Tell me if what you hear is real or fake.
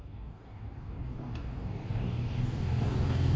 fake